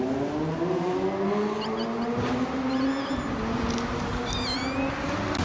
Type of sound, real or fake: real